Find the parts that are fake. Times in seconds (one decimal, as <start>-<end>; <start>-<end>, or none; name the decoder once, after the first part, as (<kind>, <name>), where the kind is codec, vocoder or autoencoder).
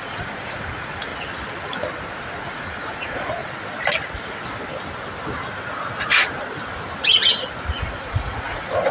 0.0-1.1 (vocoder, Vocos); 2.4-3.4; 7.8-8.9